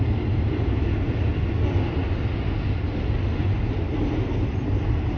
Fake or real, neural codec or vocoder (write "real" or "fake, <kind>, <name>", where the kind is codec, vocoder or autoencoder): real